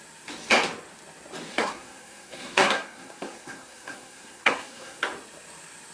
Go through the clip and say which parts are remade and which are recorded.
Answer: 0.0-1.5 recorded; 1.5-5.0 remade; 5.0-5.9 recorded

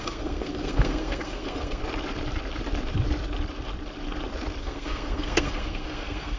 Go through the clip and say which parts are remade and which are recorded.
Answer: 0.0-1.8 remade; 1.8-4.6 recorded; 4.6-6.4 remade

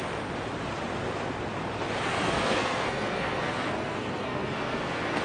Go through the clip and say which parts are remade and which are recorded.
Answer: 0.0-2.1 recorded; 2.1-5.2 remade